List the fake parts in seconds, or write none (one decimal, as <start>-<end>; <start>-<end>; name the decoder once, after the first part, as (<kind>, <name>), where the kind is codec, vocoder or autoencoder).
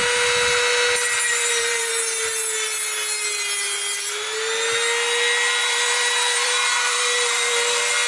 1.3-1.9 (vocoder, BigVGAN v2); 5.6-8.1